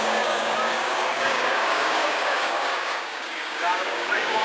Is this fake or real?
fake